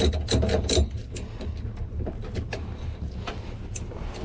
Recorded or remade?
recorded